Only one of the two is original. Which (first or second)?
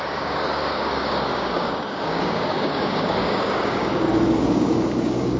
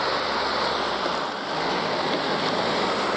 second